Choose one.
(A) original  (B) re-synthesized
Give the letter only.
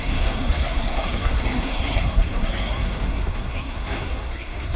B